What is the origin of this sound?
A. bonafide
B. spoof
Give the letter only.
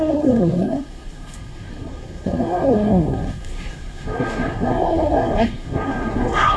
B